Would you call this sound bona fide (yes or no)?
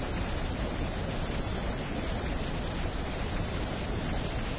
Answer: yes